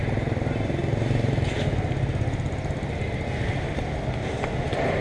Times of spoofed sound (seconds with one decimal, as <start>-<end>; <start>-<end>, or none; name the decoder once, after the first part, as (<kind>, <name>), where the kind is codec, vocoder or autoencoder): none